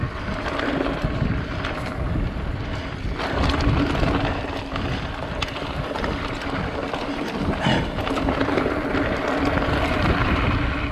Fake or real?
real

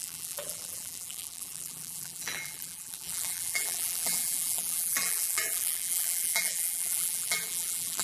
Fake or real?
fake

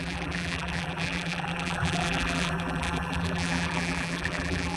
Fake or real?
fake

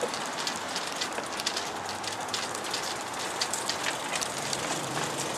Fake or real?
real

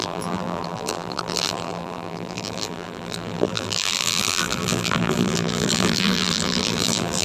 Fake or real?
fake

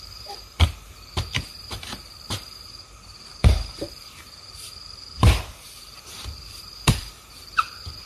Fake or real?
fake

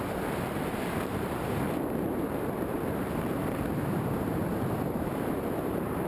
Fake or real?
fake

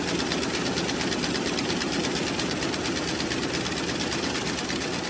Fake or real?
real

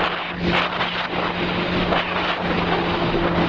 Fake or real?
real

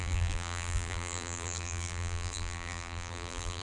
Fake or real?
fake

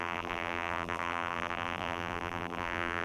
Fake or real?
fake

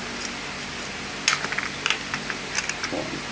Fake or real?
real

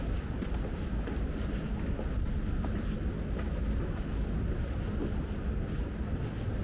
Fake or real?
real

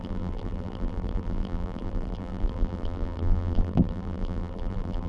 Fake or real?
fake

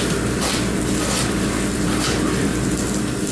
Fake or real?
fake